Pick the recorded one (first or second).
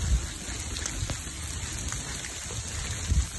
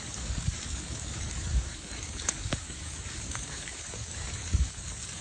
first